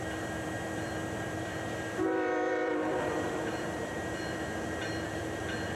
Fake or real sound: fake